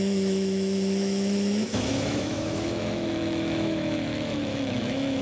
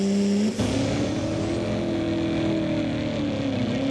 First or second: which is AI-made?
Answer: first